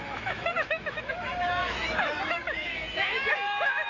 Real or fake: fake